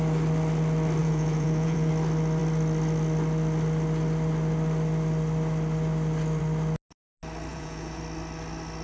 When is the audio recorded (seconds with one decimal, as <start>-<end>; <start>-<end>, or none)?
0.0-1.0; 1.9-7.5; 8.0-8.8